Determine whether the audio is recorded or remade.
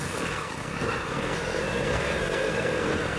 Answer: remade